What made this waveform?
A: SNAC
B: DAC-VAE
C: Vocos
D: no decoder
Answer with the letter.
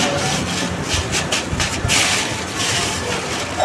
D